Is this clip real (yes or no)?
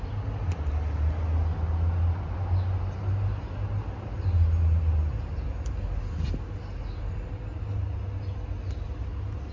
yes